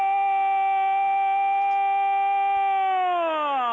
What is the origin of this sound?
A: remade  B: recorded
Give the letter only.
B